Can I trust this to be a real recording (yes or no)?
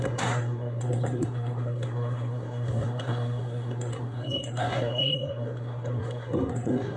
no